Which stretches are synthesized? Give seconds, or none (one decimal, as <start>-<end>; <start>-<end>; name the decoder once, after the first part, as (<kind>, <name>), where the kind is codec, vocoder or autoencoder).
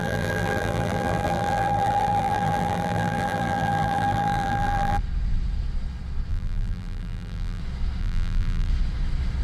0.0-5.0 (vocoder, BigVGAN v2); 6.3-7.6; 8.0-8.7